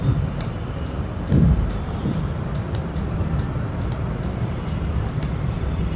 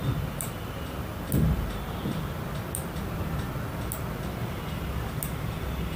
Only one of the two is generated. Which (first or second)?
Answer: first